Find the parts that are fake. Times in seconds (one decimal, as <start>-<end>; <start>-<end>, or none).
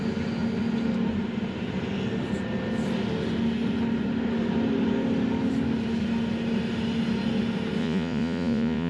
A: 7.8-8.9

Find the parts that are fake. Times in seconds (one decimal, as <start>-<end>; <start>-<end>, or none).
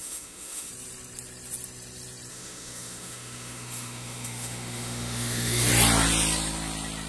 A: 0.0-0.7; 2.3-5.7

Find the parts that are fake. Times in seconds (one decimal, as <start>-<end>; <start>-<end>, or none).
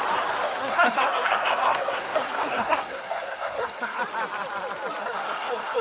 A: 0.5-4.0; 5.0-5.8